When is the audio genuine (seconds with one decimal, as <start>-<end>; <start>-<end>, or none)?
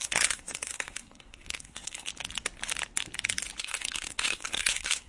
2.1-3.6